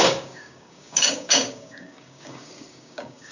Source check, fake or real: fake